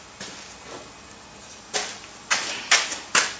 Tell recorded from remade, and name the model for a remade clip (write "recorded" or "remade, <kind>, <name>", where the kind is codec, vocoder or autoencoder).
recorded